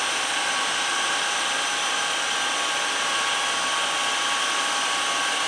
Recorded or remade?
recorded